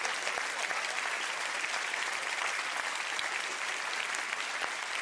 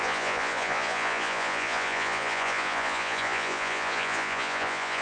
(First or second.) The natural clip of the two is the first